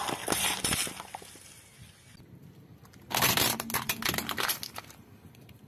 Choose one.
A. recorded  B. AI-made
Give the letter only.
A